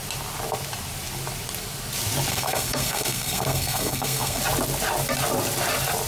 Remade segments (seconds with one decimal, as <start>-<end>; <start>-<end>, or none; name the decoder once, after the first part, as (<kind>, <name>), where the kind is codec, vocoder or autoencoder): 2.3-4.4 (codec, SNAC)